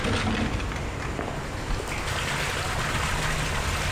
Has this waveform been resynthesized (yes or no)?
no